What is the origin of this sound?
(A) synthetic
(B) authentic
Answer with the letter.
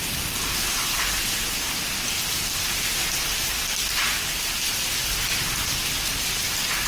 B